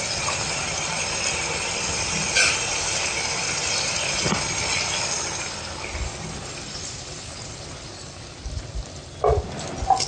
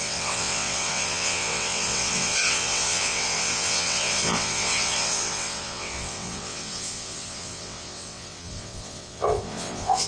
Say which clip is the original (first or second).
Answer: first